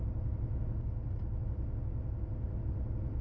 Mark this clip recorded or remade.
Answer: recorded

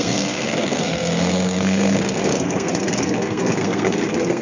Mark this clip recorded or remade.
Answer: remade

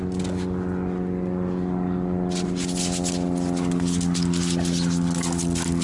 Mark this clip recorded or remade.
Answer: recorded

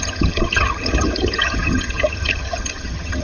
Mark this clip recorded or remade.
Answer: remade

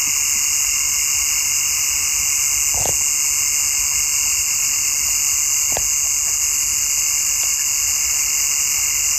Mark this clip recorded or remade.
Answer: recorded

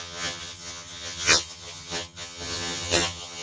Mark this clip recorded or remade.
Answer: remade